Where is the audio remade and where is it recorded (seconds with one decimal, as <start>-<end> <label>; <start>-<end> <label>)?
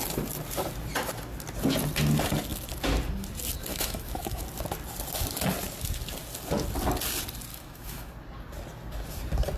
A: 0.0-3.7 recorded; 3.7-4.4 remade; 4.4-7.5 recorded; 7.5-8.1 remade; 8.1-9.6 recorded